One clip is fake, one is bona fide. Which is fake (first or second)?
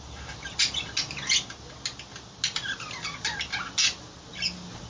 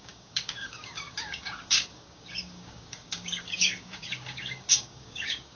second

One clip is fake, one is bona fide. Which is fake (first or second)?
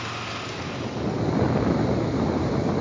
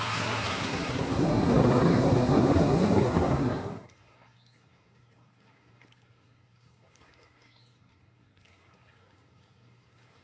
second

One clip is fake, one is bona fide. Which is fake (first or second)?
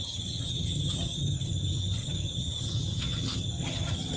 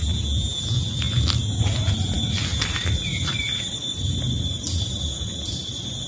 first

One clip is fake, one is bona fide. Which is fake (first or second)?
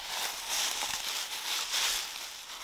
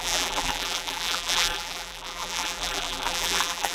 second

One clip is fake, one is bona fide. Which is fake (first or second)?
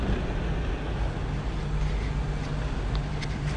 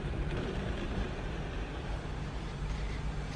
second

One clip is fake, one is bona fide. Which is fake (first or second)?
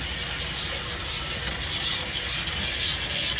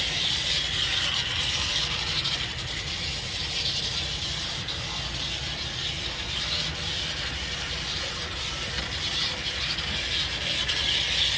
second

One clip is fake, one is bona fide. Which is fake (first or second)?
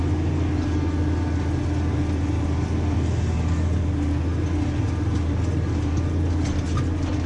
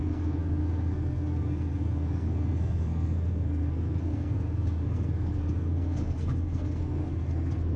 second